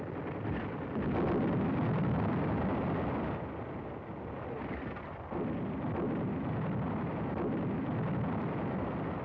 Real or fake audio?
real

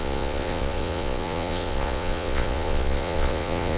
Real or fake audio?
fake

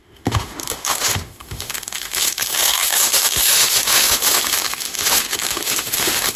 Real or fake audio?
fake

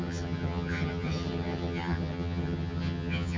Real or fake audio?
fake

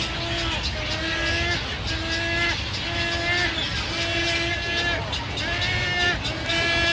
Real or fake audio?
real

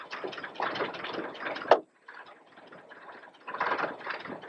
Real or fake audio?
fake